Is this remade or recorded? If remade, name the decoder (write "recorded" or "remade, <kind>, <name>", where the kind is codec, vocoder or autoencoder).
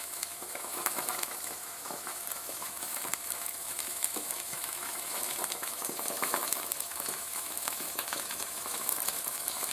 remade, autoencoder, DAC-VAE